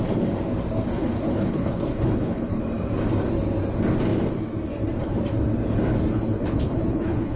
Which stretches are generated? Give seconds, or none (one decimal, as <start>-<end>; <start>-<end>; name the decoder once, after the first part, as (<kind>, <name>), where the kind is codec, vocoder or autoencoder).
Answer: 0.9-2.6 (codec, HILCodec); 6.1-7.4